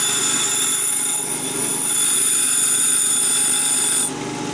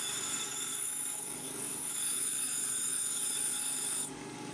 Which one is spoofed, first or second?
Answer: second